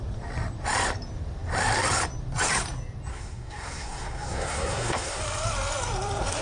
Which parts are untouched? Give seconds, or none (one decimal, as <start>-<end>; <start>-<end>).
0.0-3.1; 5.2-6.4